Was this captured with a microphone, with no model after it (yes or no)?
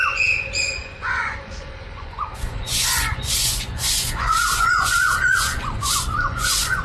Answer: no